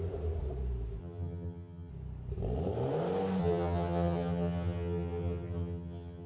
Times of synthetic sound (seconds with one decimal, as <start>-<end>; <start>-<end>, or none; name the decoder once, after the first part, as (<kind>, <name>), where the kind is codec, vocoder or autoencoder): 1.0-1.9 (vocoder, HiFi-GAN); 3.4-6.3